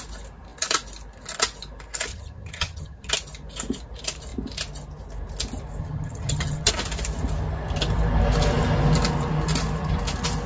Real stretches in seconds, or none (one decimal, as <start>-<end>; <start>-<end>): 0.0-2.1; 3.1-5.8; 6.7-10.5